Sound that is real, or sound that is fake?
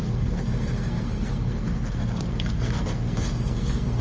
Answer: fake